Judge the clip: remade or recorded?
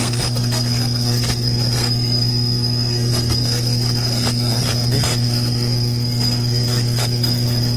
remade